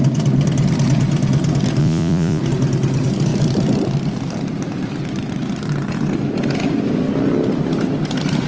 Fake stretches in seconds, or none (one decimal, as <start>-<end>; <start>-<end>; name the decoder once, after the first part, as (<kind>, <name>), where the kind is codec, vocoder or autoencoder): 1.8-2.4 (vocoder, Vocos)